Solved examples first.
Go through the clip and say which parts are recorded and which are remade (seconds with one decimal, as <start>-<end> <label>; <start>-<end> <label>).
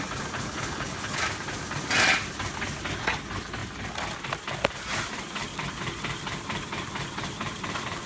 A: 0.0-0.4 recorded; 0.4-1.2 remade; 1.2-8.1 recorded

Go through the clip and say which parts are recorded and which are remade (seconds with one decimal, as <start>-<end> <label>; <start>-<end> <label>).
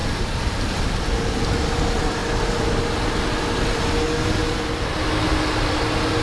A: 0.0-6.2 recorded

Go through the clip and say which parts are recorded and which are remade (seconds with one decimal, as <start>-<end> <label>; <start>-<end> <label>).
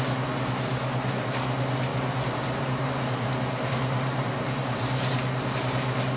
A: 0.0-1.9 recorded; 1.9-5.6 remade; 5.6-6.2 recorded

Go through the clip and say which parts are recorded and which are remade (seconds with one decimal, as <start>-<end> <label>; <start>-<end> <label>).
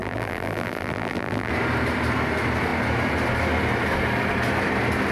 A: 0.0-1.5 remade; 1.5-5.1 recorded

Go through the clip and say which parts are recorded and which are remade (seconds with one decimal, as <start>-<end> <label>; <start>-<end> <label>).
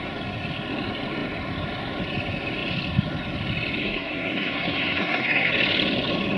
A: 0.0-3.8 recorded; 3.8-5.5 remade; 5.5-6.4 recorded